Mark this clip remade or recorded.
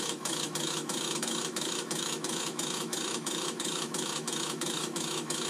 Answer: remade